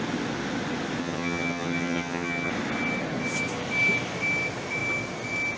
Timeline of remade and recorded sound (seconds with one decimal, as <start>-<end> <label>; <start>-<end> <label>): 0.0-1.0 recorded; 1.0-2.5 remade; 2.5-5.6 recorded